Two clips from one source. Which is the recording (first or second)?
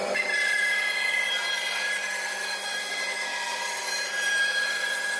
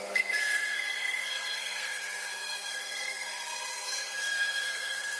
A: first